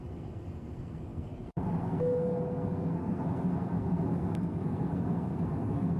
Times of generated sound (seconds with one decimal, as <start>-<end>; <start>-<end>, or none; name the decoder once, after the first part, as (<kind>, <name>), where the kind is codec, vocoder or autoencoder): 0.0-6.0 (codec, SNAC)